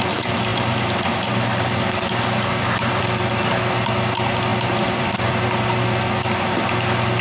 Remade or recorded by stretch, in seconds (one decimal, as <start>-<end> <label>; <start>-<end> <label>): 0.0-7.2 recorded